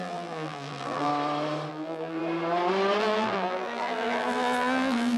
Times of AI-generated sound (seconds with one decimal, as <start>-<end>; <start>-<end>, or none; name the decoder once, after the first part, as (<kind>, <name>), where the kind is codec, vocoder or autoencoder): 0.0-1.1 (vocoder, BigVGAN v2); 1.7-2.2; 3.0-5.2